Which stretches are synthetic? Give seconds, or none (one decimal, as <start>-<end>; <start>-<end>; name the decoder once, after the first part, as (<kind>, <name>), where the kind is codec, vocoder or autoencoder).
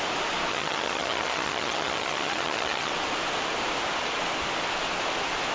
0.5-2.9 (vocoder, HiFi-GAN)